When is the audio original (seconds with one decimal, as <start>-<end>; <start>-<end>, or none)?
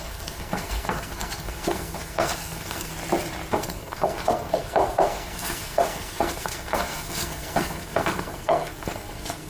2.9-3.5